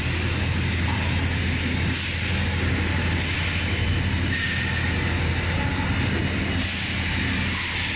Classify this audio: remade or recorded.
recorded